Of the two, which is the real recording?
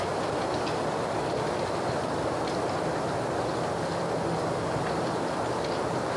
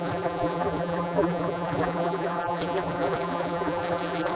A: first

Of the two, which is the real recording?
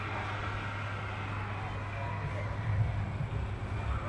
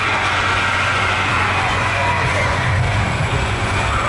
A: first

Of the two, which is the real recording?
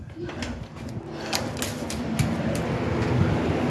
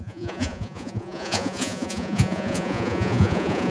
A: first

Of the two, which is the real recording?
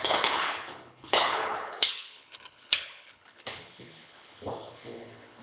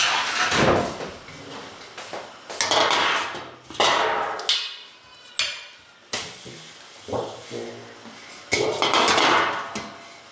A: second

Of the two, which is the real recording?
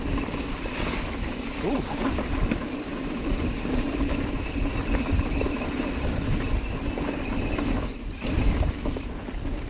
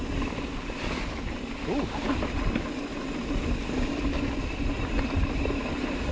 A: second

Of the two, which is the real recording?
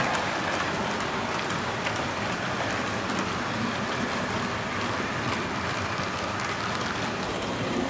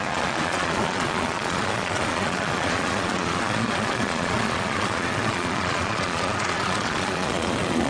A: first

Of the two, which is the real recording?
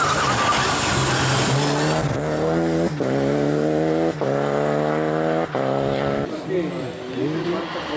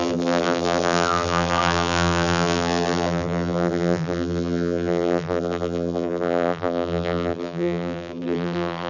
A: first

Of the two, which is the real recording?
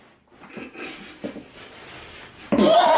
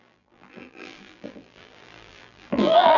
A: first